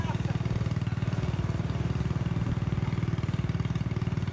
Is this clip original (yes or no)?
yes